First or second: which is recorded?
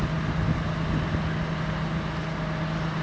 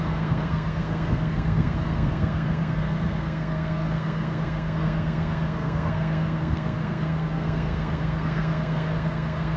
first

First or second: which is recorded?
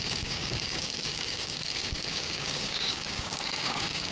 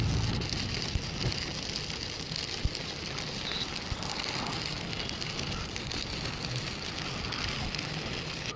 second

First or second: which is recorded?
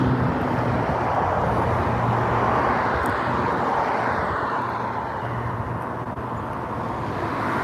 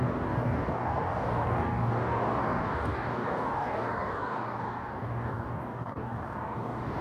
first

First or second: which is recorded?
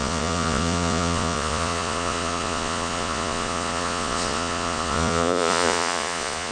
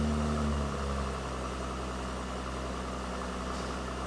second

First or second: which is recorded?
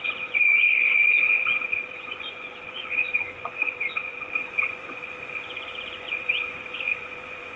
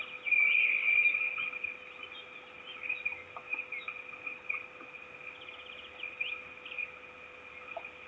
second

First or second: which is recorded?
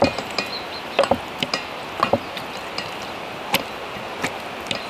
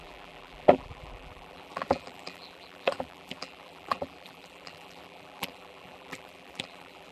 first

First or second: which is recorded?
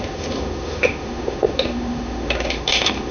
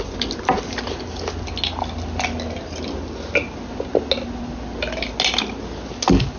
second